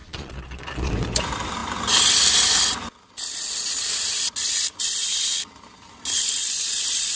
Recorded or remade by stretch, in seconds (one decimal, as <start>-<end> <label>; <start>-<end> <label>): 0.0-0.9 remade; 0.9-7.2 recorded